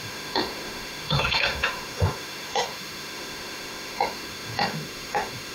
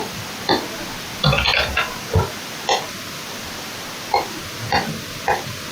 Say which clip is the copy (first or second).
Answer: first